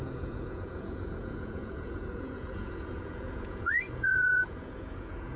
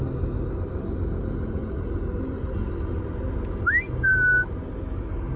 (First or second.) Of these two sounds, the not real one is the first